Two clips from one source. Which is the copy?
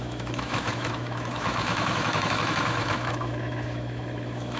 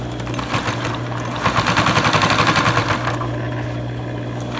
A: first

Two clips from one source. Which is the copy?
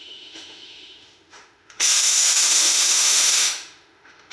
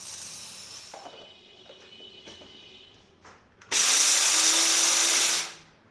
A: first